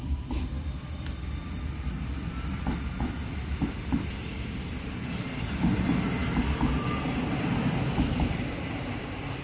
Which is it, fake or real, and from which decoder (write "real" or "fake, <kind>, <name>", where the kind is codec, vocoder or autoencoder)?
real